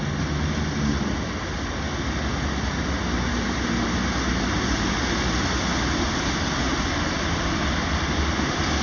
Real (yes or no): yes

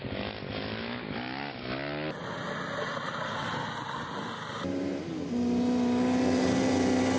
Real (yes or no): yes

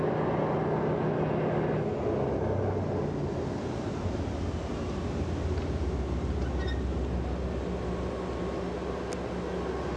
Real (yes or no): yes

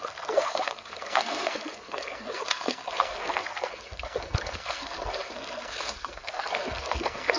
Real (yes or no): no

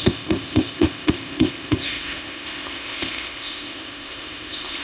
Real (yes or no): no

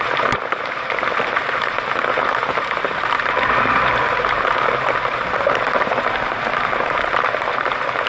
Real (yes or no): no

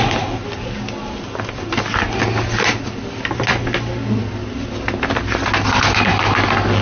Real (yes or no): yes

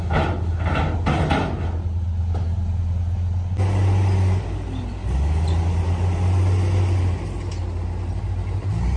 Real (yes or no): yes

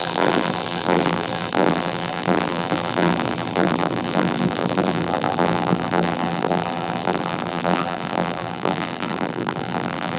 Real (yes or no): no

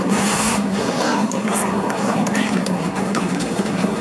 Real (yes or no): no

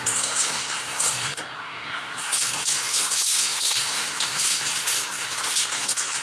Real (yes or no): no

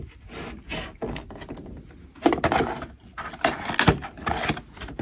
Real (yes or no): yes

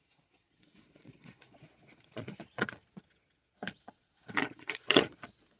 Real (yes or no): no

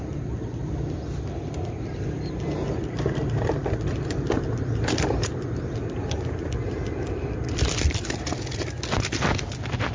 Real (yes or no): yes